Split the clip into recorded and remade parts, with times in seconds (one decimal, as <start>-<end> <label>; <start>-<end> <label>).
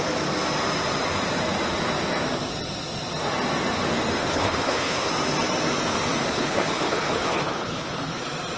0.0-4.2 recorded; 4.2-5.1 remade; 5.1-6.2 recorded; 6.2-8.2 remade; 8.2-8.6 recorded